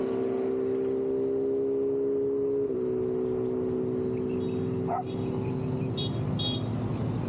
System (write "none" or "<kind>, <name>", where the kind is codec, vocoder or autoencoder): none